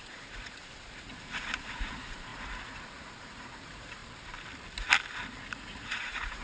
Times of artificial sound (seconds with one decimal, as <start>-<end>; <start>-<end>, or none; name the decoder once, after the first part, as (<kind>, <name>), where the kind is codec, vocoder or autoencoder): 0.0-4.0 (vocoder, Vocos); 5.5-6.4